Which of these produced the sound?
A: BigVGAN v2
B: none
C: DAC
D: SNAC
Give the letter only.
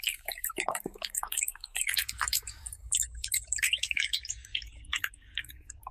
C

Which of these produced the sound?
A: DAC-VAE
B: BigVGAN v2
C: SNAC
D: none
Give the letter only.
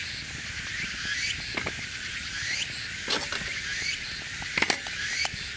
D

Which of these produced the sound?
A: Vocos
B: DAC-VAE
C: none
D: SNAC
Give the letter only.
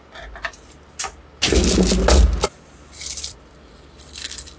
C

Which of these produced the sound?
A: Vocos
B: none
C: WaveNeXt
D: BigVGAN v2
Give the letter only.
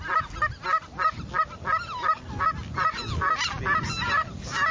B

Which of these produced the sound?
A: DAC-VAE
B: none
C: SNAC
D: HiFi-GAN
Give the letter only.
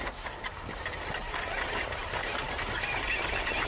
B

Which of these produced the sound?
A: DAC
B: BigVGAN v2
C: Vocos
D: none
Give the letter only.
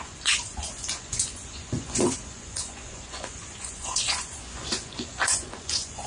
C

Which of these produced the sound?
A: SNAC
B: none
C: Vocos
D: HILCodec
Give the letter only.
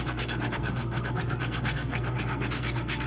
A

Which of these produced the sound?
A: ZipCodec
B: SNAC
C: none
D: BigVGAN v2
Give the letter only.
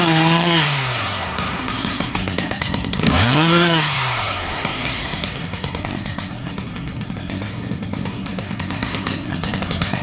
B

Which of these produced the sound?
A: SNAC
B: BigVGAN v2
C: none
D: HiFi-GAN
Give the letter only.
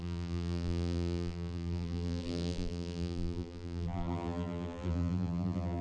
B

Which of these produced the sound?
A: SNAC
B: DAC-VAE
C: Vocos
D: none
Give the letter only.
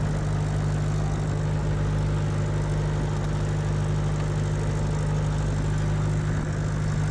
D